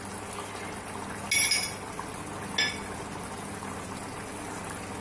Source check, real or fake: real